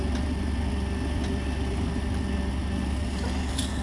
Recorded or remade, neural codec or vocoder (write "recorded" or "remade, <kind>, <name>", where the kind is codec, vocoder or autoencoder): recorded